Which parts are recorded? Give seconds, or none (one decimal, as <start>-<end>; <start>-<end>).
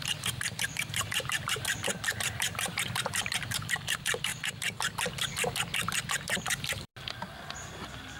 4.3-6.0; 6.9-8.2